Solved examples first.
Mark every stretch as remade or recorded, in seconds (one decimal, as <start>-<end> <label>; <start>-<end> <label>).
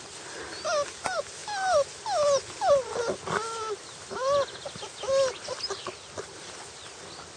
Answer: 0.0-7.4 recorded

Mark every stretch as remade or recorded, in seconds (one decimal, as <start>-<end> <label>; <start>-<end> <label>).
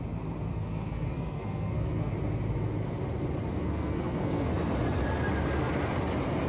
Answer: 0.0-0.5 recorded; 0.5-2.1 remade; 2.1-3.6 recorded; 3.6-4.5 remade; 4.5-6.5 recorded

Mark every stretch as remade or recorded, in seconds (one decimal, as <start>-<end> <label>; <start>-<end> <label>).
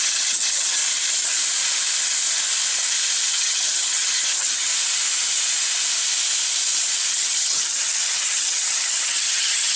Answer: 0.0-0.8 remade; 0.8-3.3 recorded; 3.3-4.7 remade; 4.7-7.1 recorded; 7.1-9.8 remade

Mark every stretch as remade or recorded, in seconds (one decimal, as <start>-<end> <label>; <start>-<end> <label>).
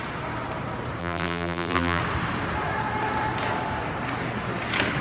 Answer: 0.0-1.0 recorded; 1.0-2.0 remade; 2.0-5.0 recorded